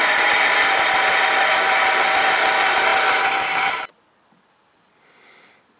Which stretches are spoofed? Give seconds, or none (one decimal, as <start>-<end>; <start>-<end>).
none